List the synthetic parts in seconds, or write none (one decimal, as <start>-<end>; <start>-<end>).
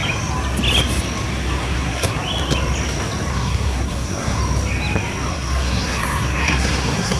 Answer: 1.6-2.2; 3.3-4.4; 5.3-7.2